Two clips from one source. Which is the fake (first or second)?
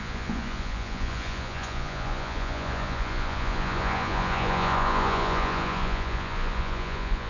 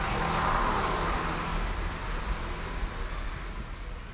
first